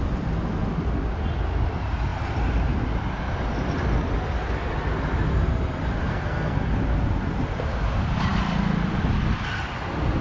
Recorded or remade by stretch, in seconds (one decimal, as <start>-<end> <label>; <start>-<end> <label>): 0.0-6.1 recorded; 6.1-6.7 remade; 6.7-10.2 recorded